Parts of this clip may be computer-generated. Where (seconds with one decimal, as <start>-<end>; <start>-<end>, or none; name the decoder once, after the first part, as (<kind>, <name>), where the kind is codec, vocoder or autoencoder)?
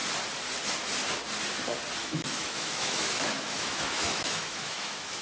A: 2.0-5.2 (autoencoder, DAC-VAE)